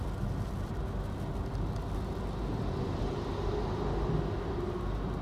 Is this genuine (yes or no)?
yes